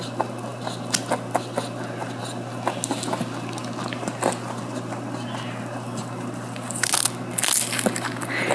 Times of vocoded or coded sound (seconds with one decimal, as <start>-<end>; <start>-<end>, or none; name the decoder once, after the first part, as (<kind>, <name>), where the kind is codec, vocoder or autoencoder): none